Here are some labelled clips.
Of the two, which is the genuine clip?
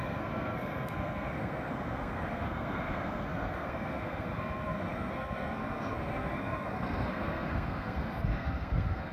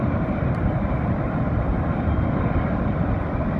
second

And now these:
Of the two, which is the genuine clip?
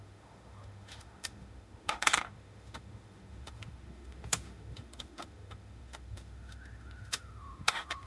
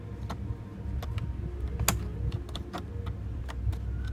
second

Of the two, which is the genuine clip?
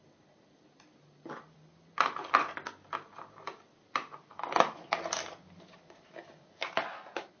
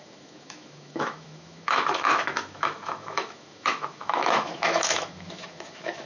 first